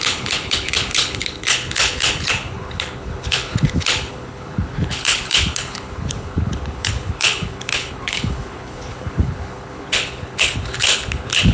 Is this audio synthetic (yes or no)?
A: yes